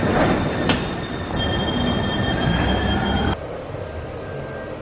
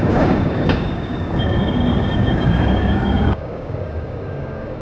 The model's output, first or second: second